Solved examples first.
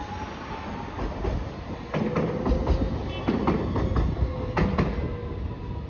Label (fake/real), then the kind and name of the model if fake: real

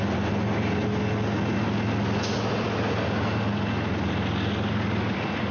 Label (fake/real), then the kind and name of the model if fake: real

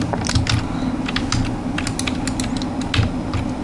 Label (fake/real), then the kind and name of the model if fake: real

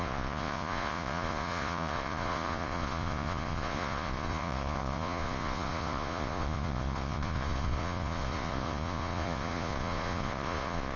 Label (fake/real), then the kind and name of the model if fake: fake, vocoder, Vocos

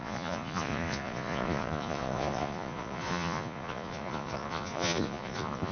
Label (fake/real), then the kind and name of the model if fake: fake, vocoder, Vocos